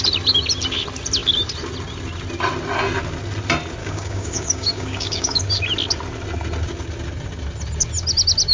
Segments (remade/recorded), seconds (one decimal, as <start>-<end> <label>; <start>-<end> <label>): 0.0-3.8 recorded; 3.8-5.4 remade; 5.4-8.5 recorded